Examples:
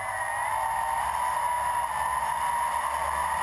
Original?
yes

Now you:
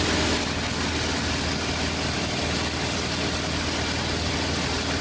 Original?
yes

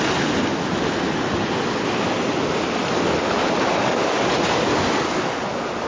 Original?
yes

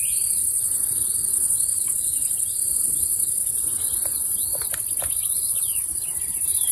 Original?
yes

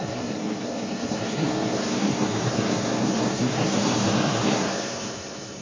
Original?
no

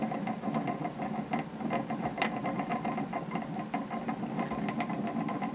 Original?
yes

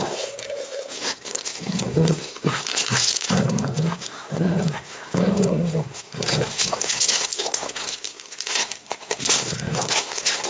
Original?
no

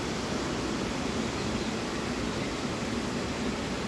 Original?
yes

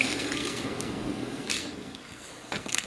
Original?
no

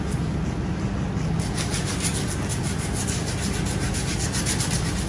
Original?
yes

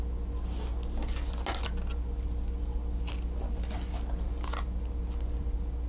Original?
yes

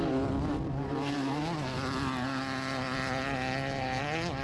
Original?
yes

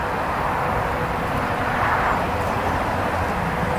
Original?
yes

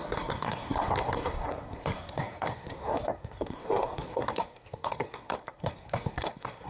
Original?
no